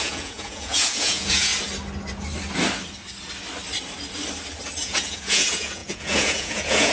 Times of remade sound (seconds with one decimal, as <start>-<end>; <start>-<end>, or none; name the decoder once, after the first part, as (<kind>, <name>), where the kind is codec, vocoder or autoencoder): 0.0-1.5 (vocoder, Vocos); 4.8-6.9